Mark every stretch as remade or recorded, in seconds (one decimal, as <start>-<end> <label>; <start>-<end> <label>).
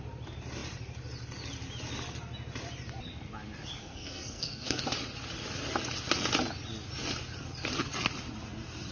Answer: 0.0-3.8 recorded; 3.8-4.8 remade; 4.8-8.9 recorded